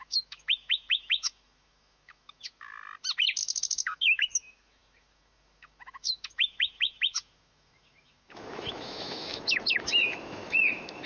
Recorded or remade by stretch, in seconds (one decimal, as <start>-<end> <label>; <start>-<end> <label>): 0.0-2.7 remade; 2.7-3.4 recorded; 3.4-11.1 remade